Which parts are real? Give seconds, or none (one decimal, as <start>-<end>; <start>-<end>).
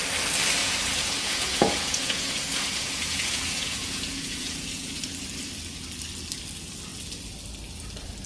0.0-0.6; 5.1-8.3